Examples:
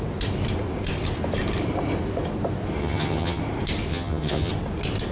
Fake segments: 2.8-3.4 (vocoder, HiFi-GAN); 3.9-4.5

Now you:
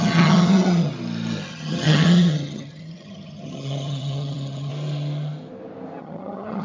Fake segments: 0.0-0.9 (vocoder, HiFi-GAN); 1.5-4.7; 6.0-6.6

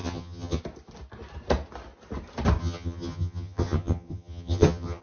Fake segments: 0.0-0.6 (vocoder, HiFi-GAN); 2.6-5.0

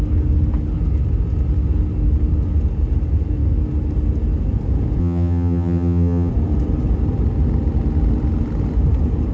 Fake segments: 5.0-6.3 (vocoder, HiFi-GAN)

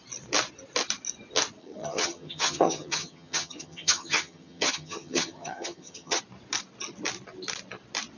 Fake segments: 1.6-6.2 (vocoder, HiFi-GAN)

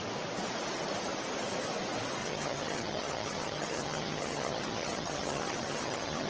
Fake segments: 2.2-6.3 (vocoder, HiFi-GAN)

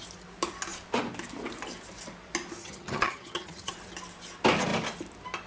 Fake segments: 2.6-3.7 (vocoder, HiFi-GAN)